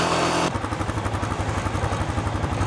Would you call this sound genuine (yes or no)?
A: yes